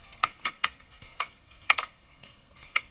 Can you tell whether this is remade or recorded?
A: remade